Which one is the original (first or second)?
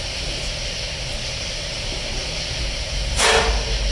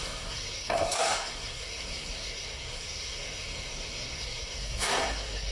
first